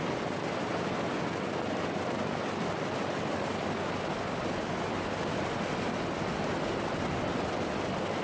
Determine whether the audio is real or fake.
real